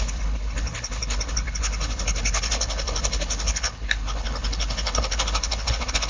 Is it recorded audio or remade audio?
remade